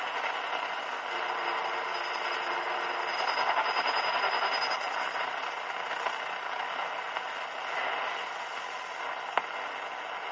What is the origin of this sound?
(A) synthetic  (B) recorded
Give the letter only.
B